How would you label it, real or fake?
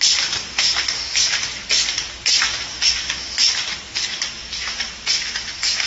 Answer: real